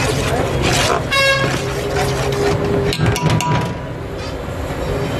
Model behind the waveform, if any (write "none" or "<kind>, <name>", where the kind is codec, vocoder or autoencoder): none